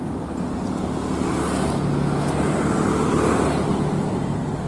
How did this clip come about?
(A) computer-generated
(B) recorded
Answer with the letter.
B